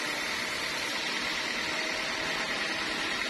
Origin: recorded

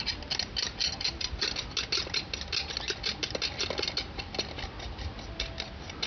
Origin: recorded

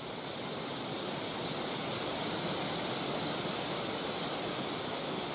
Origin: recorded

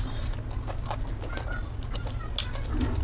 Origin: recorded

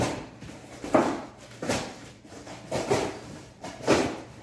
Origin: remade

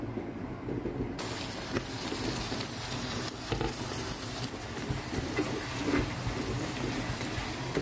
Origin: recorded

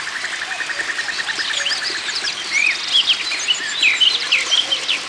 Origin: recorded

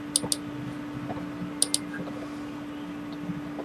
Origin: recorded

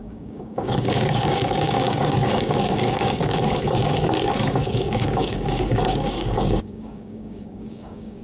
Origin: remade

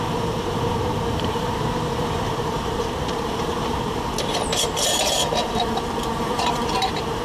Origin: remade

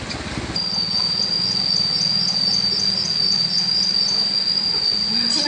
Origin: recorded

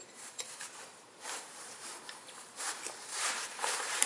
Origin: remade